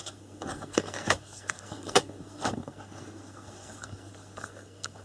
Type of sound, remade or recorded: remade